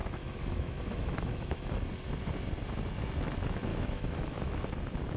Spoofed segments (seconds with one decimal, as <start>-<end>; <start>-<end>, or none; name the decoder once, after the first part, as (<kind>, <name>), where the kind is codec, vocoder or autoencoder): 0.0-1.7 (autoencoder, DAC-VAE); 3.7-4.6